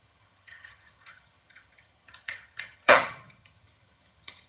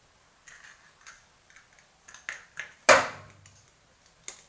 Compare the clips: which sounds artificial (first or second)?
first